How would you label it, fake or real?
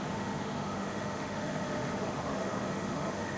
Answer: fake